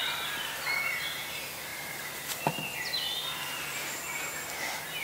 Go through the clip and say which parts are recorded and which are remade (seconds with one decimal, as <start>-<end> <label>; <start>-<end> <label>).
0.0-1.7 recorded; 1.7-2.5 remade; 2.5-5.0 recorded